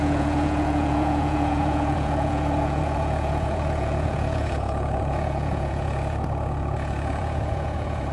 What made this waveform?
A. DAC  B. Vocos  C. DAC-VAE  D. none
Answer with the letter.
B